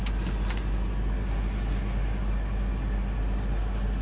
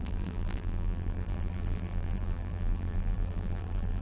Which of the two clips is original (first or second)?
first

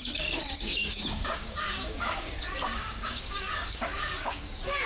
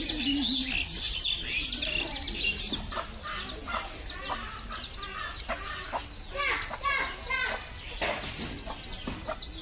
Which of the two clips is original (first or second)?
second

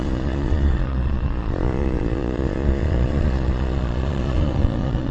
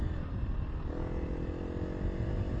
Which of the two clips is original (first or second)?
second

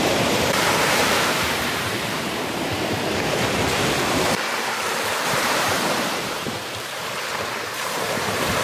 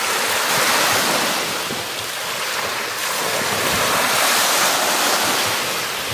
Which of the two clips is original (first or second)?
second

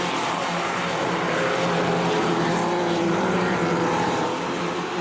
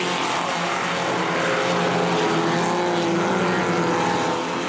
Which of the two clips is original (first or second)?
second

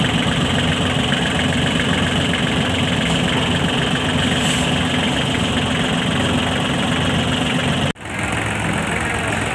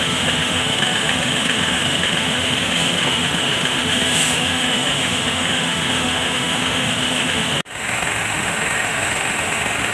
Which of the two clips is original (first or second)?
first